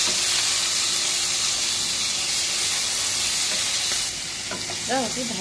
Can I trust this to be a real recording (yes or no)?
yes